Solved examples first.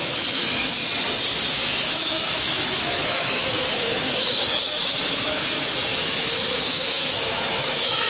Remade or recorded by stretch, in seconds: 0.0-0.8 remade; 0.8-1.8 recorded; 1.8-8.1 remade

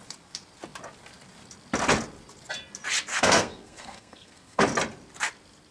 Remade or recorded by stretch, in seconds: 0.0-3.1 recorded; 3.1-4.6 remade; 4.6-5.7 recorded

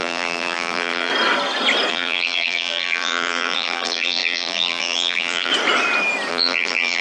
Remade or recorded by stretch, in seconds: 0.0-1.1 remade; 1.1-1.9 recorded; 1.9-5.5 remade; 5.5-6.3 recorded; 6.3-7.0 remade

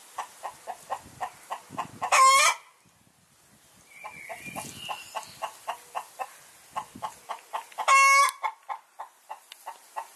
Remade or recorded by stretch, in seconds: 0.0-10.2 recorded

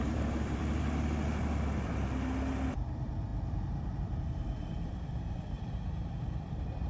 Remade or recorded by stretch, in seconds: 0.0-0.6 remade; 0.6-2.7 recorded; 2.7-6.9 remade

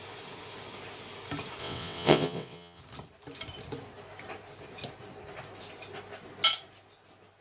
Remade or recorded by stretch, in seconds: 0.0-1.6 recorded; 1.6-2.8 remade; 2.8-7.4 recorded

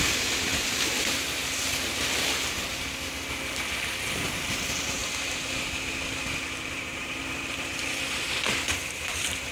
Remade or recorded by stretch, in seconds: 0.0-1.4 remade; 1.4-4.1 recorded; 4.1-5.0 remade; 5.0-6.6 recorded; 6.6-9.5 remade

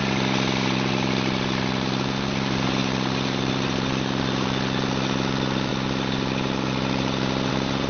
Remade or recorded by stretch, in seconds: 0.0-7.9 recorded